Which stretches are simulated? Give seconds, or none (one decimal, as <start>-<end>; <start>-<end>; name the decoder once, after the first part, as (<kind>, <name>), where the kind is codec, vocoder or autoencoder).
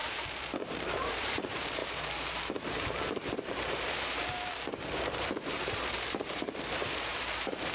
0.0-7.7 (vocoder, BigVGAN v2)